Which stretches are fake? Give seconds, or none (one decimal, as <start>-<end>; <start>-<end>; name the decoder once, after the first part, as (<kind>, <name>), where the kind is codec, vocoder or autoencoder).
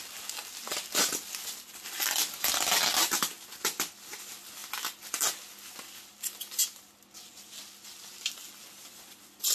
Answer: none